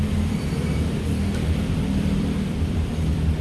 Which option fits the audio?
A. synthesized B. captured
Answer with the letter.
A